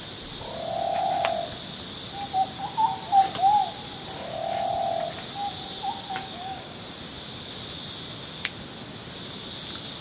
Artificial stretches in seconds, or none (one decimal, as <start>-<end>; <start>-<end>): 6.2-6.8